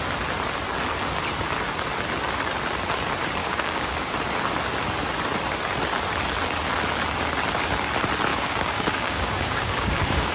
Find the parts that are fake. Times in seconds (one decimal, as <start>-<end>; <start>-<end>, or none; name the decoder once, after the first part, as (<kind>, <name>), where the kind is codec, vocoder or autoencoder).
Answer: 3.4-4.1 (codec, DAC); 8.3-10.3